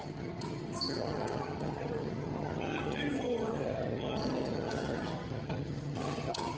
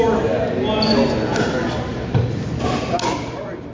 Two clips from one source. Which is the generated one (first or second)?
first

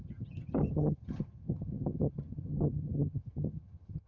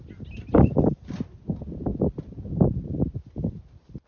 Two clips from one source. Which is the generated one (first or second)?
first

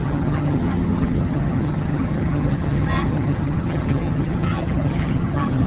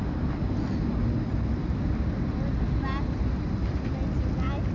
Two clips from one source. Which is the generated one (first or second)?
first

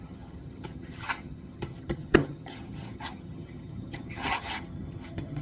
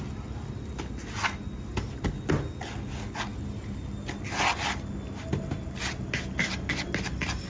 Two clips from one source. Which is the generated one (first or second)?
first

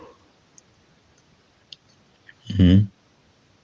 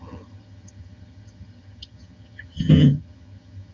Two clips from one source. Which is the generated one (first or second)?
second